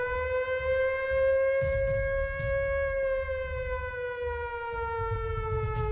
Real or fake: real